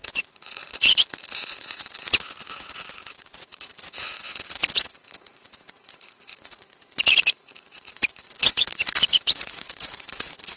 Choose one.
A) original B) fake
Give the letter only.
B